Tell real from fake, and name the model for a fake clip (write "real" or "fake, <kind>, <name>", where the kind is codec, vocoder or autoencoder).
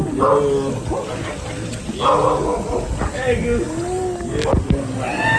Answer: real